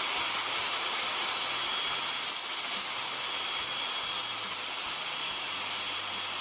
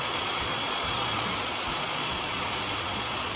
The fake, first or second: second